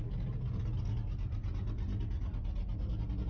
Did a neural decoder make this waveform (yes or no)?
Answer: no